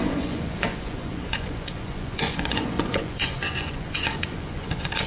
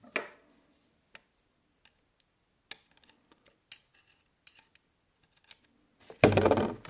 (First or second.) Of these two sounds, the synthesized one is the first